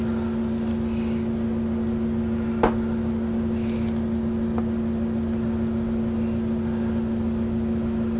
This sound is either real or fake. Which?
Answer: real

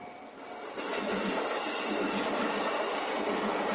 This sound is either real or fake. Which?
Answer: real